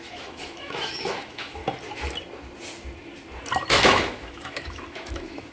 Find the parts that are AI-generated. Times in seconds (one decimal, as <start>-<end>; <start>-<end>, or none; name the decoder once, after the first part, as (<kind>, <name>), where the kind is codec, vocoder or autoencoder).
0.0-1.6 (autoencoder, DAC-VAE); 3.7-5.5